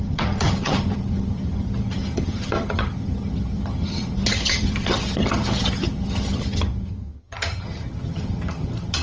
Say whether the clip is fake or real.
fake